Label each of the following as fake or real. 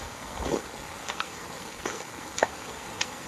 fake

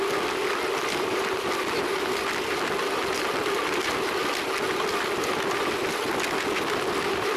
real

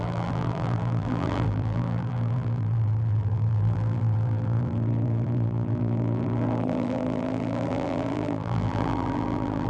fake